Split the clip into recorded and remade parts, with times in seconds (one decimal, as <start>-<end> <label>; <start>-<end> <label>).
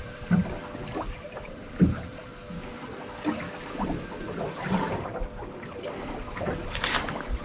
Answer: 0.0-0.4 remade; 0.4-1.0 recorded; 1.0-2.3 remade; 2.3-6.7 recorded; 6.7-7.4 remade